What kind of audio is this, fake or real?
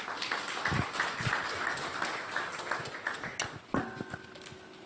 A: real